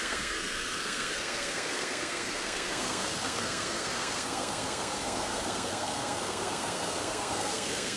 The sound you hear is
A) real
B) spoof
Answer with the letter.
B